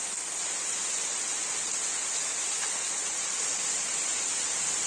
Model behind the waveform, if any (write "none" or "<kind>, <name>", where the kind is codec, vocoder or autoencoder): none